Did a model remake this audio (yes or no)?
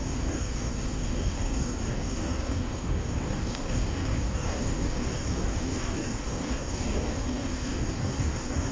yes